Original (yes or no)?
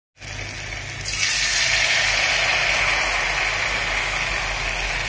yes